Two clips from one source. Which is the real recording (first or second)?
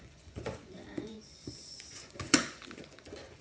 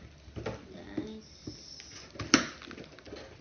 second